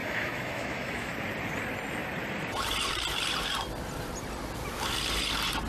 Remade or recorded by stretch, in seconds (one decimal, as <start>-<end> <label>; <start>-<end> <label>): 0.0-1.1 remade; 1.1-5.7 recorded